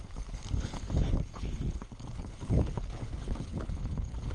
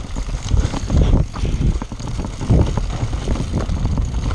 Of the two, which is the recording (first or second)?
second